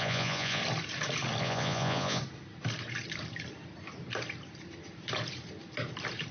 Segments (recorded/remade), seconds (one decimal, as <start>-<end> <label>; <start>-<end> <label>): 0.0-0.6 remade; 0.6-1.4 recorded; 1.4-2.2 remade; 2.2-6.3 recorded